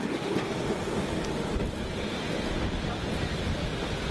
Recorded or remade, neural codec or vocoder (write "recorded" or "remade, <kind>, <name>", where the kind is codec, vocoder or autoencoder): recorded